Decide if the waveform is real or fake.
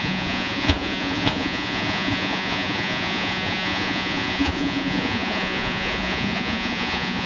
fake